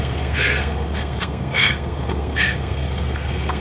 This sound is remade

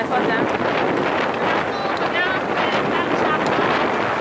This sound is recorded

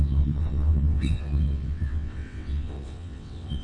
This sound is remade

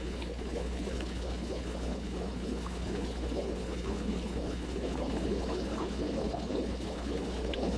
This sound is remade